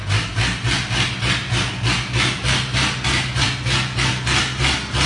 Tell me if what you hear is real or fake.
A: real